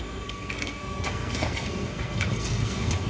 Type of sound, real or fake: fake